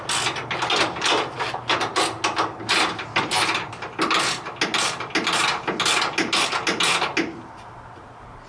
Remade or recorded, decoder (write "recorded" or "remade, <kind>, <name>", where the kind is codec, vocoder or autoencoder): recorded